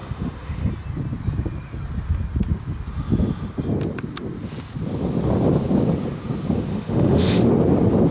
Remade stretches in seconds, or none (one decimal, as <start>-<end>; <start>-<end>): 0.0-0.7; 6.7-7.5